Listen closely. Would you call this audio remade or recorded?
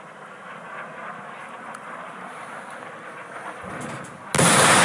recorded